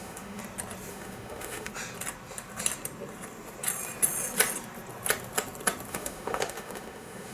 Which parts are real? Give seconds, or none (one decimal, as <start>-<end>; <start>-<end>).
0.4-0.9; 1.7-5.9

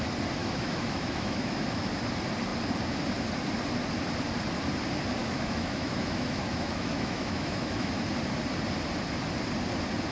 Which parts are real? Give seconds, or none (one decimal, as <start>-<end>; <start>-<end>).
0.0-0.4; 2.0-5.2; 8.0-10.1

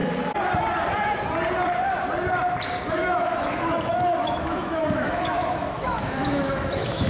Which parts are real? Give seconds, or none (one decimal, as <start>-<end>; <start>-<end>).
0.0-2.9

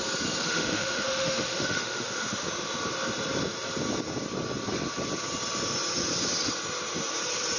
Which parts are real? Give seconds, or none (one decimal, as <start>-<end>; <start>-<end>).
0.0-0.4; 2.5-7.6

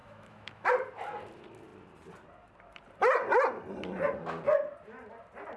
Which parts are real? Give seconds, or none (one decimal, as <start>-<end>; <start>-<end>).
0.7-5.6

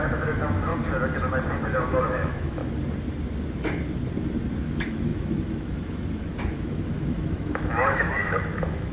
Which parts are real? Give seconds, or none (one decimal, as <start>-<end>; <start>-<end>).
0.7-1.8; 2.6-4.6

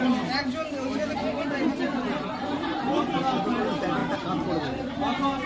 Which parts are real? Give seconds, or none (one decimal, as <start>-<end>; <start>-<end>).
0.0-5.5

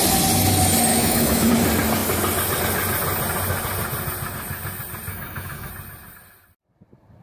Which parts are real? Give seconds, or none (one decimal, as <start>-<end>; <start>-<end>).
0.0-0.9; 1.5-5.1; 5.7-7.2